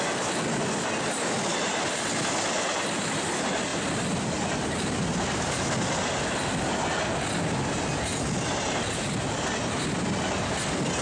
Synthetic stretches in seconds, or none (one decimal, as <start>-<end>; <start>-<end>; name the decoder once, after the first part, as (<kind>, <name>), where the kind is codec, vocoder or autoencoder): none